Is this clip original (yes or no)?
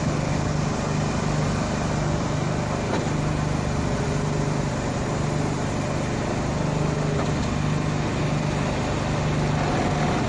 yes